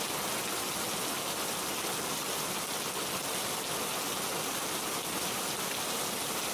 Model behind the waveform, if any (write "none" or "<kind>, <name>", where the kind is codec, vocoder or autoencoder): none